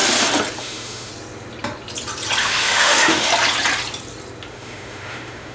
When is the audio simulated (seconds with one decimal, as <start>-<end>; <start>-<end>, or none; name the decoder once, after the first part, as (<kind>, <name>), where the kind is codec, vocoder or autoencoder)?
0.6-1.1 (autoencoder, DAC-VAE); 2.4-3.3; 4.5-5.5